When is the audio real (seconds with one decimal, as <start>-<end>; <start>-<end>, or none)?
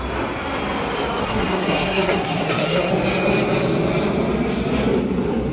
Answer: 0.0-1.2; 2.9-5.5